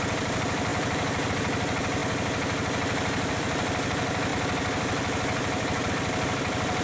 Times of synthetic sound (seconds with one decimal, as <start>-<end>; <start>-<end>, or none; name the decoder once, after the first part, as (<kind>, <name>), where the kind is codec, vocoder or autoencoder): 0.0-2.0 (vocoder, BigVGAN v2); 3.3-6.8

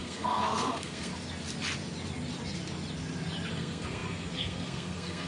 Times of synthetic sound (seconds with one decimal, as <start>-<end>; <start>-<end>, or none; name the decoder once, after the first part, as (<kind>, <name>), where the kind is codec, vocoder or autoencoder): 0.0-1.1 (codec, SNAC); 3.5-5.3